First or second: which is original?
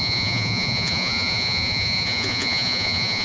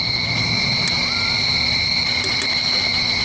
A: second